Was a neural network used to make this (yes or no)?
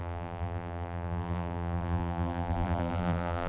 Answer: yes